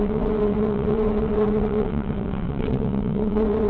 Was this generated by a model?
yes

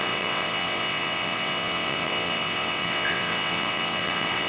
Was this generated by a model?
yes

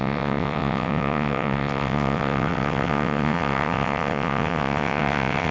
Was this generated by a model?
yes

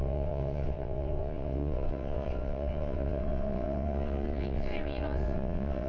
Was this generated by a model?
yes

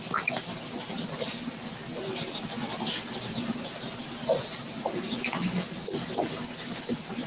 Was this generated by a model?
no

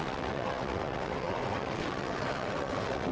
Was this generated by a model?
yes